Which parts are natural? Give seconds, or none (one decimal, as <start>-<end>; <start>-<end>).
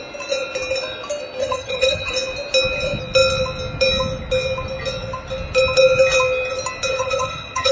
0.0-1.4; 2.1-6.9